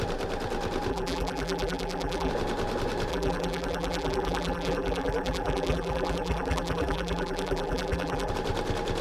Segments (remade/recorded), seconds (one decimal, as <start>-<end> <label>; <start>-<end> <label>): 0.0-0.9 recorded; 0.9-2.3 remade; 2.3-3.1 recorded; 3.1-8.3 remade; 8.3-9.0 recorded